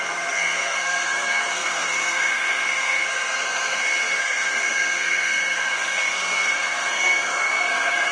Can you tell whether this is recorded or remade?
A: remade